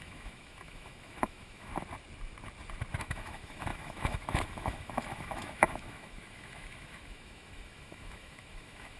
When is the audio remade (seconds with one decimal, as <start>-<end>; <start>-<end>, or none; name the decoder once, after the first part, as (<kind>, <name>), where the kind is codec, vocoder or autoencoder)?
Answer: 0.0-1.7 (autoencoder, DAC-VAE); 3.0-9.0